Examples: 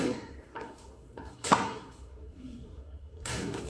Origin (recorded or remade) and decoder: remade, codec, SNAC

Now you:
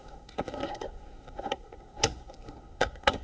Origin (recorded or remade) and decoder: remade, codec, SNAC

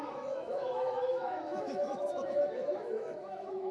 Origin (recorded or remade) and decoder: remade, autoencoder, DAC-VAE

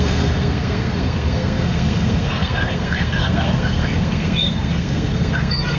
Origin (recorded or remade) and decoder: remade, codec, SNAC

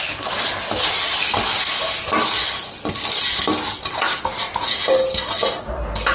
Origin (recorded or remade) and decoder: recorded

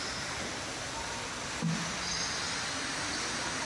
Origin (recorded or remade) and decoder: recorded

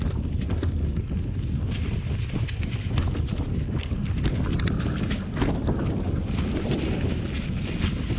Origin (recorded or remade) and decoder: recorded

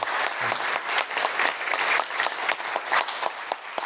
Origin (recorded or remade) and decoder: recorded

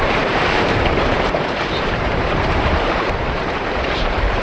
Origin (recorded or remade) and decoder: remade, vocoder, BigVGAN v2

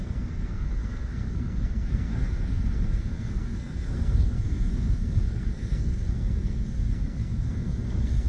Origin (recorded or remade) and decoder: remade, codec, SNAC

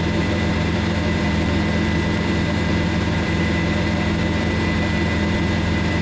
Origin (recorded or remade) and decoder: remade, vocoder, BigVGAN v2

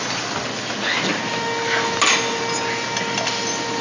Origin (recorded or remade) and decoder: recorded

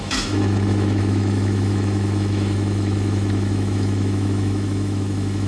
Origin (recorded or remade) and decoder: remade, autoencoder, DAC-VAE